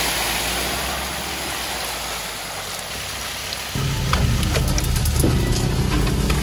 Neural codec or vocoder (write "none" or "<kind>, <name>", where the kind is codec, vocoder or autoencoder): none